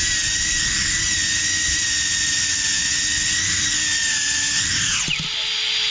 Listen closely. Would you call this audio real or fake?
real